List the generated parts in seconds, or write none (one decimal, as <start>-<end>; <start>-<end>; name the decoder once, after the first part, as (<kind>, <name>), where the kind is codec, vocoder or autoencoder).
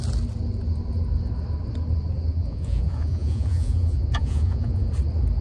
2.3-4.9 (vocoder, Vocos)